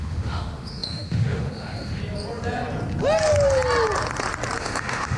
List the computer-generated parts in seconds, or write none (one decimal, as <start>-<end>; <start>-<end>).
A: 0.0-2.0; 4.6-5.2